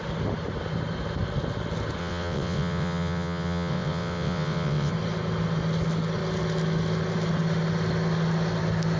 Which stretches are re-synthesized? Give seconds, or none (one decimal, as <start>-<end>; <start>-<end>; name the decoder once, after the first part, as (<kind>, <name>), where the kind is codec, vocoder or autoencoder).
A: 2.0-4.9 (vocoder, WaveNeXt)